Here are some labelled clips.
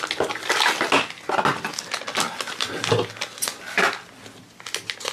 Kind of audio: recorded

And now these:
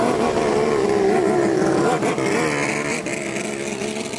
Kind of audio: recorded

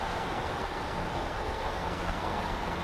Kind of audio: remade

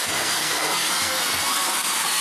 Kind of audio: remade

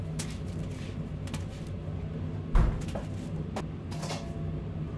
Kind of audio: recorded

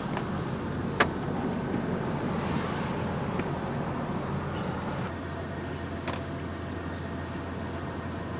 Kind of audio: recorded